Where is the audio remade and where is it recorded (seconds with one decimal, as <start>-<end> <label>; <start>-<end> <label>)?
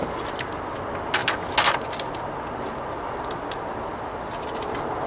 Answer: 0.0-5.1 recorded